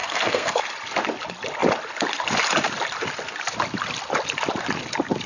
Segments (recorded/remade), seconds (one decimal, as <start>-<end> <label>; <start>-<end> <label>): 0.0-0.6 remade; 0.6-5.3 recorded